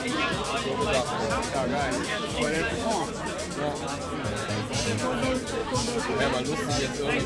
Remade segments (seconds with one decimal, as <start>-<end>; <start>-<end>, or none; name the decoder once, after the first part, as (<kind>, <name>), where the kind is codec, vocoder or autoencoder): 2.1-3.1 (autoencoder, DAC-VAE); 5.6-6.2